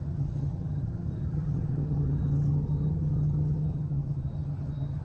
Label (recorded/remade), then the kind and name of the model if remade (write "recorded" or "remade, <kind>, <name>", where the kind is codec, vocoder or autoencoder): remade, vocoder, HiFi-GAN